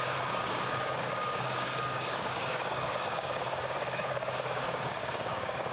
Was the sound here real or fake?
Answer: fake